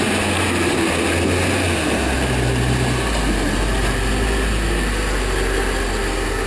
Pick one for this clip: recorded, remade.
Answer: recorded